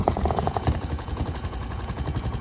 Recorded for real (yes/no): no